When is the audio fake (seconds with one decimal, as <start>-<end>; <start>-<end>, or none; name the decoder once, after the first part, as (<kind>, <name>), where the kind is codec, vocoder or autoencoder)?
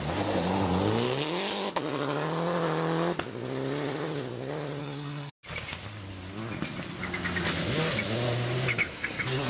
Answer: 4.8-5.3 (codec, SNAC); 8.9-9.5